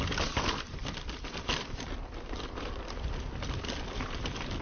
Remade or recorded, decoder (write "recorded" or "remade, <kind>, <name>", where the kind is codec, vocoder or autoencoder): recorded